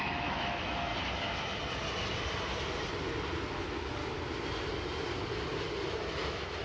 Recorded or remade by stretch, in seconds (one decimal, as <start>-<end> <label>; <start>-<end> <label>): 0.0-0.9 remade; 0.9-3.5 recorded; 3.5-4.0 remade; 4.0-5.9 recorded; 5.9-6.6 remade